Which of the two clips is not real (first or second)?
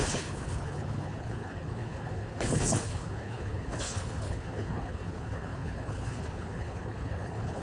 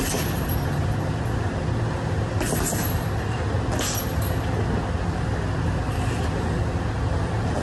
first